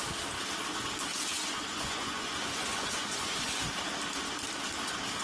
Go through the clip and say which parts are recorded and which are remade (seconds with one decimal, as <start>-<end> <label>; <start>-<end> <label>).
0.0-1.1 recorded; 1.1-3.6 remade; 3.6-5.2 recorded